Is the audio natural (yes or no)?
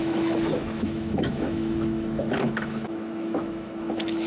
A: no